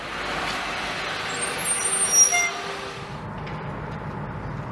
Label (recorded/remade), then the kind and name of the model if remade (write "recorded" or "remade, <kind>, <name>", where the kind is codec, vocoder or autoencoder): recorded